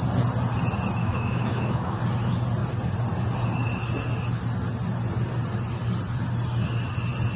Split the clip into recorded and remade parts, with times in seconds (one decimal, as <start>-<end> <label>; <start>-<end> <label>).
0.0-1.0 recorded; 1.0-2.0 remade; 2.0-7.4 recorded

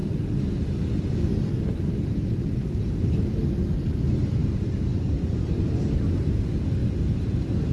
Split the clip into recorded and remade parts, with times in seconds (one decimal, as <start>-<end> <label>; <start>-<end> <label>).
0.0-7.7 recorded

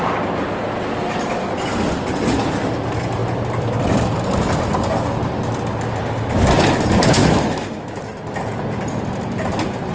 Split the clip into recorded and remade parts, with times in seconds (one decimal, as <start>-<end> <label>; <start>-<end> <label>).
0.0-7.2 recorded; 7.2-8.0 remade; 8.0-9.9 recorded

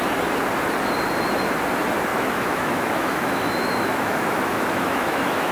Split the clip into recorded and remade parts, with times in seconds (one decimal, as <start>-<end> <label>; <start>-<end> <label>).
0.0-2.1 recorded; 2.1-5.5 remade

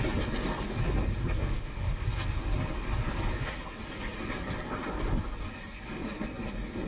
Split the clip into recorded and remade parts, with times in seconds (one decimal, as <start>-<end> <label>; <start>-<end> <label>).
0.0-1.4 recorded; 1.4-2.0 remade; 2.0-6.9 recorded

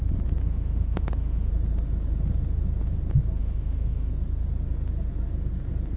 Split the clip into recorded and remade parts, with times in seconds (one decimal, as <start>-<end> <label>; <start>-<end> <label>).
0.0-0.4 recorded; 0.4-1.5 remade; 1.5-3.4 recorded; 3.4-4.1 remade; 4.1-6.0 recorded

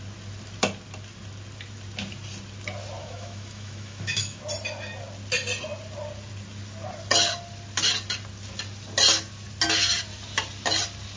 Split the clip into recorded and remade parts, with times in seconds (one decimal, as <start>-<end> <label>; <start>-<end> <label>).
0.0-3.0 recorded; 3.0-4.4 remade; 4.4-11.2 recorded

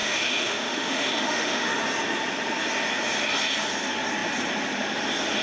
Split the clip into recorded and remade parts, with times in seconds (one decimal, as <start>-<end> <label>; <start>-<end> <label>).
0.0-1.8 remade; 1.8-5.4 recorded